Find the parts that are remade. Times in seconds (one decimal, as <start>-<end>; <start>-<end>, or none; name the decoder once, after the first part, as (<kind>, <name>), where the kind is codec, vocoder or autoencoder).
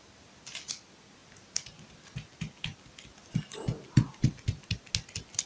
1.2-1.8 (vocoder, BigVGAN v2)